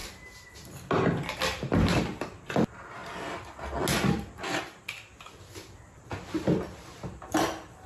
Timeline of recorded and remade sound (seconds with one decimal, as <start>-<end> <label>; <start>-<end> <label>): 0.0-7.9 recorded